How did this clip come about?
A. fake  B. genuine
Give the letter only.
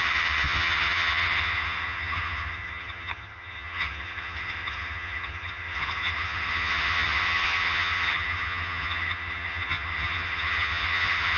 A